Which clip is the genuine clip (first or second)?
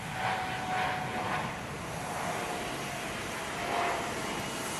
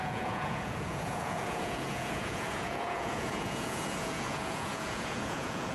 first